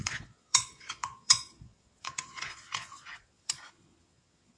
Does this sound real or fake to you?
fake